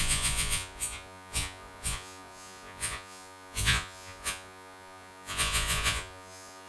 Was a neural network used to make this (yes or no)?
yes